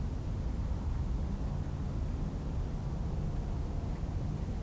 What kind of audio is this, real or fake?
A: real